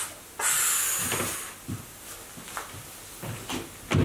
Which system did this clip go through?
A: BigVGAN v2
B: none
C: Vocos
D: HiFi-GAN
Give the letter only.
B